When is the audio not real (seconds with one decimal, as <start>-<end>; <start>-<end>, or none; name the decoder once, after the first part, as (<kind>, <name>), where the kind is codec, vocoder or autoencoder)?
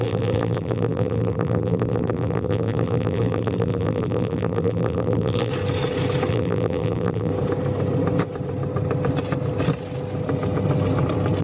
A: 0.0-5.5 (vocoder, BigVGAN v2); 6.3-7.3